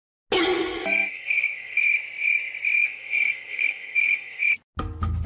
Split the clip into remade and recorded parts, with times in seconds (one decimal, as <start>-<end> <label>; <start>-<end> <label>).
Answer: 0.0-1.1 recorded; 1.1-1.8 remade; 1.8-2.8 recorded; 2.8-4.4 remade; 4.4-5.3 recorded